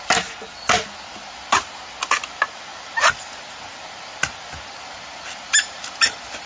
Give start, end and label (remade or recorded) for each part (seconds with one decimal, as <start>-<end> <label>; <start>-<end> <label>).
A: 0.0-6.5 recorded